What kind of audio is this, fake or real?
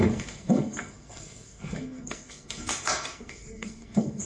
fake